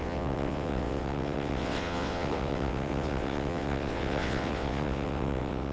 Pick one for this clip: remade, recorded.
remade